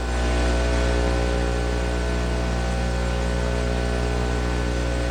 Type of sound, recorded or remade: recorded